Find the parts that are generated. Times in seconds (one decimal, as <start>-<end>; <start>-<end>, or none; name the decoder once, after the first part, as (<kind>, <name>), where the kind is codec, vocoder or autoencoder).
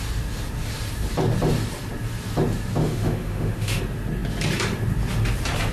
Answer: 2.8-3.8 (autoencoder, DAC-VAE)